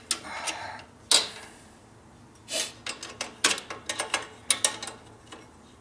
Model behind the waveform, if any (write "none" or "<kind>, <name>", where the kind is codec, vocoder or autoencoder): none